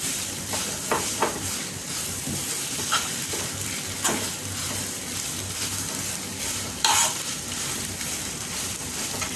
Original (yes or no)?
no